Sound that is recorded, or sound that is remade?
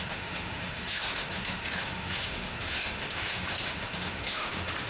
remade